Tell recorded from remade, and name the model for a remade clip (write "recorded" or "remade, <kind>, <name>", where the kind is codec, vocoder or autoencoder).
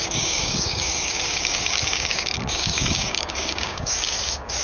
remade, codec, DAC